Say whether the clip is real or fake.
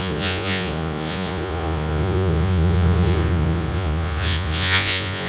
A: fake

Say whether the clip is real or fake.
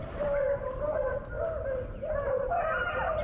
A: fake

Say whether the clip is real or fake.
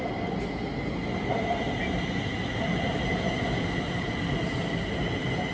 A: real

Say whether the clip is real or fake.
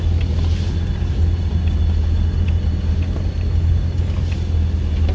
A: real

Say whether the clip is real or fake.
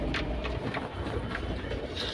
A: real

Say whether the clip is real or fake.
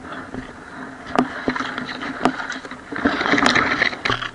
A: real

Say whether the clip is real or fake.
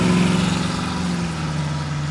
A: real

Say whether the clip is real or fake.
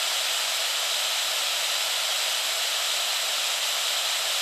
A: real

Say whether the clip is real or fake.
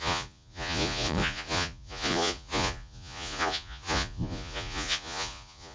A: fake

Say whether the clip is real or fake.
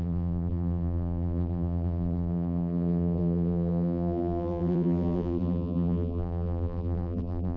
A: fake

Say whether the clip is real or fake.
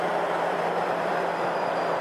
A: fake